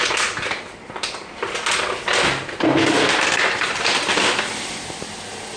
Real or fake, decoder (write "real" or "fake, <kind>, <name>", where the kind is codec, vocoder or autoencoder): real